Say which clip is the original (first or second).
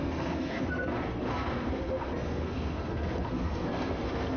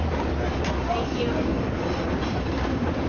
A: second